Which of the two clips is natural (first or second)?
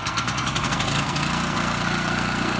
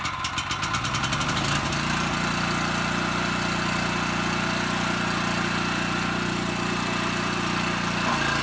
second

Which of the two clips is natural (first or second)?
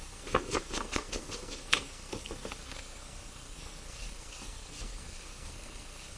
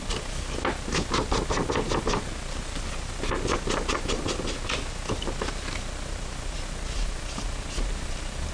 second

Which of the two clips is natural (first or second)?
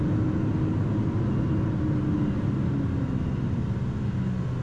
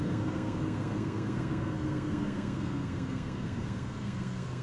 first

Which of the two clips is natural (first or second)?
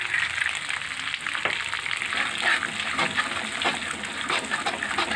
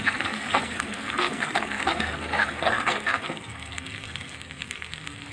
first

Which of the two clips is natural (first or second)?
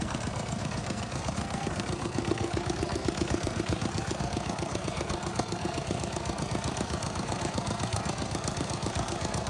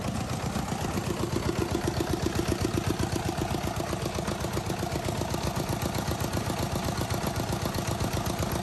second